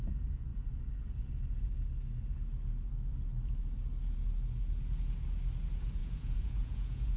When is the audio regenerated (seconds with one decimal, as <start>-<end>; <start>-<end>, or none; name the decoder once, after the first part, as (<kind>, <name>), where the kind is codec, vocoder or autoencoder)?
6.0-7.2 (vocoder, Vocos)